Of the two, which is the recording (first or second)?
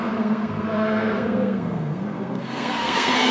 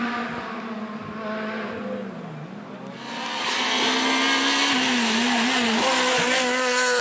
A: second